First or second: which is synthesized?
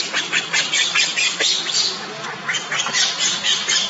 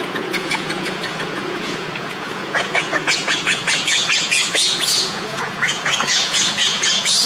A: second